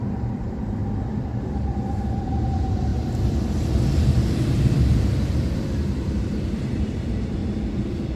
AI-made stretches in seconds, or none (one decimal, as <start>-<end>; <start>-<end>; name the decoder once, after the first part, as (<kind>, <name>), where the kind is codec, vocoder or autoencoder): 0.0-0.8 (vocoder, BigVGAN v2); 2.2-2.9; 4.9-7.4